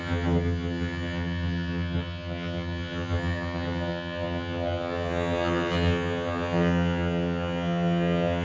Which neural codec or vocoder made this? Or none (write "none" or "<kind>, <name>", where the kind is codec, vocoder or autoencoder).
vocoder, HiFi-GAN